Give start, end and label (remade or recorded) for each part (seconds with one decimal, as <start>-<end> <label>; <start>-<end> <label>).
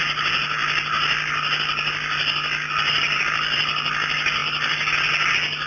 0.0-5.7 recorded